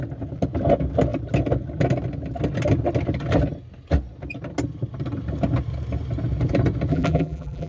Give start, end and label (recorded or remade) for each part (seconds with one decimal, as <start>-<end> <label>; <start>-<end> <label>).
0.0-6.9 recorded; 6.9-7.7 remade